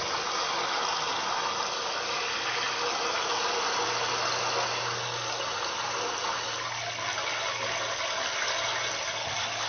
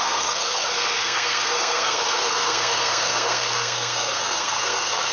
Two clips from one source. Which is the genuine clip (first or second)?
first